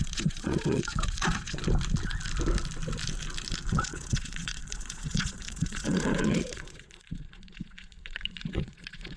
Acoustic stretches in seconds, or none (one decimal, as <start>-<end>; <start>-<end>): 1.6-3.7